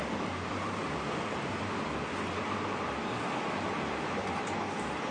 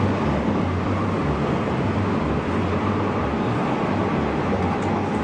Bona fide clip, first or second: second